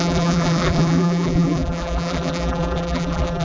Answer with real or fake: fake